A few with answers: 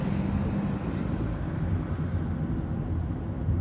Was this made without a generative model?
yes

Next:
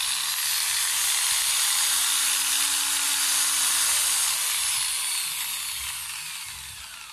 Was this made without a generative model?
yes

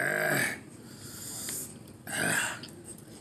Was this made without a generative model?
yes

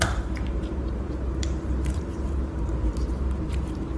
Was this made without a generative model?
no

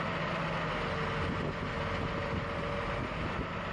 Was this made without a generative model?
yes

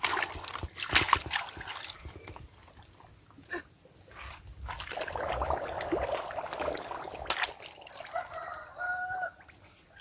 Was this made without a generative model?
yes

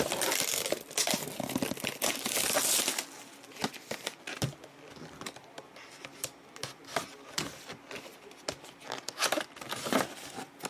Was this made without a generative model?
yes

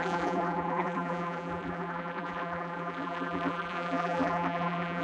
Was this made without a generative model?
no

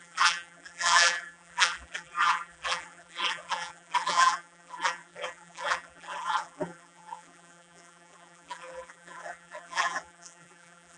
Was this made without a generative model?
no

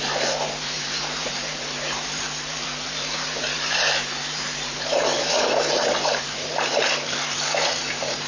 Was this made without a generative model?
no